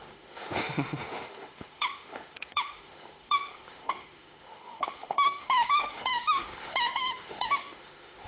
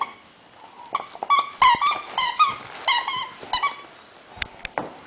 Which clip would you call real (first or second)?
second